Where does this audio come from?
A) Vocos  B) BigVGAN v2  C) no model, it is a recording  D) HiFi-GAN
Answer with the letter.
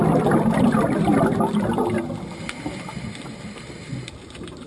C